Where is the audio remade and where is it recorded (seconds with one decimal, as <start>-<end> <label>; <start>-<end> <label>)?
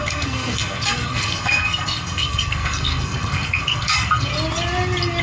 0.0-4.3 remade; 4.3-5.2 recorded